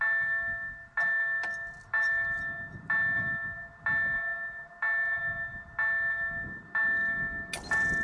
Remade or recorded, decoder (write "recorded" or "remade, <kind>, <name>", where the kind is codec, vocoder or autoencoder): recorded